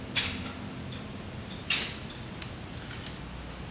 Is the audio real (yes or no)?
yes